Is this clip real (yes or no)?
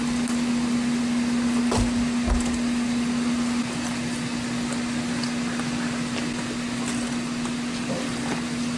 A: yes